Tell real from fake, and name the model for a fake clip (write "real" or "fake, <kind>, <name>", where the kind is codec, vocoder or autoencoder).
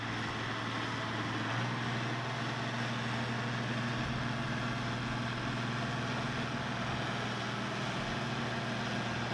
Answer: real